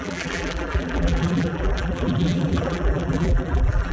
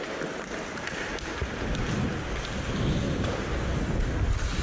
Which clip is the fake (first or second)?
first